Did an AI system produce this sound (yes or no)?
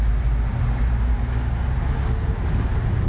no